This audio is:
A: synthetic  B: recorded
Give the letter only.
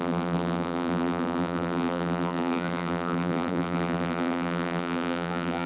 A